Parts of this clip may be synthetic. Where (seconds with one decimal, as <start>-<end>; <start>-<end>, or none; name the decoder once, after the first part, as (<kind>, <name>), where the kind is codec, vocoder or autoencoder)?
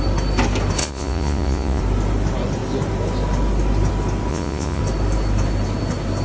0.8-1.8 (vocoder, Vocos); 4.3-4.8